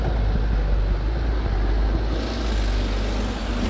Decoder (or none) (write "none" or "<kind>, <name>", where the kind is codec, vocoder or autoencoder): none